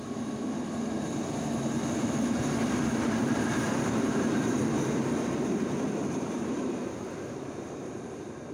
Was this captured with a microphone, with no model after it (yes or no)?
no